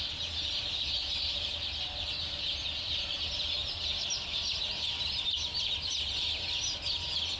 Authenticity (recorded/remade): recorded